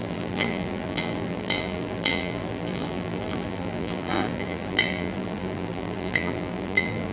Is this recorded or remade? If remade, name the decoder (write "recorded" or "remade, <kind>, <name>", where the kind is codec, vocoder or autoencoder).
remade, vocoder, BigVGAN v2